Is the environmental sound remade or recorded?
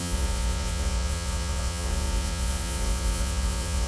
remade